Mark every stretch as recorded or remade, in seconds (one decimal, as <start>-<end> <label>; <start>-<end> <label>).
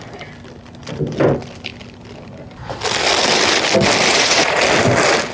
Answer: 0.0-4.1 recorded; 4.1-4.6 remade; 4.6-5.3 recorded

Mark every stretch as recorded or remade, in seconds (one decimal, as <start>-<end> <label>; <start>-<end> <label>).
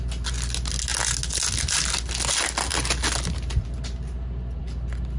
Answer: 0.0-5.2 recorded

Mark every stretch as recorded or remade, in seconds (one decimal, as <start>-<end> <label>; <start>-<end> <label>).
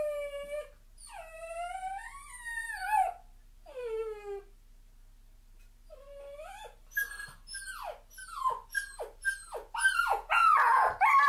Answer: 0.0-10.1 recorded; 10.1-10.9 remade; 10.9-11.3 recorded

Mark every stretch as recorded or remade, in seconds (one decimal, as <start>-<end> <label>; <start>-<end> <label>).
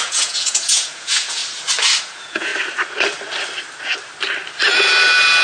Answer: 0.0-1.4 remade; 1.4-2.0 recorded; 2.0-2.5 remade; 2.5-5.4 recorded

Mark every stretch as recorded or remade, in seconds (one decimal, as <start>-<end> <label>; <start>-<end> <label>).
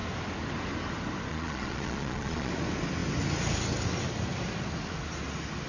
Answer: 0.0-1.3 recorded; 1.3-2.5 remade; 2.5-5.7 recorded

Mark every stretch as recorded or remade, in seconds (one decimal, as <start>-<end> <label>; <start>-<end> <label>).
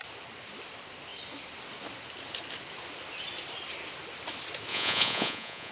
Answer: 0.0-4.7 recorded; 4.7-5.7 remade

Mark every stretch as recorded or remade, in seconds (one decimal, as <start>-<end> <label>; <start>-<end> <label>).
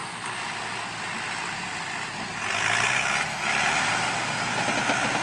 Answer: 0.0-5.2 recorded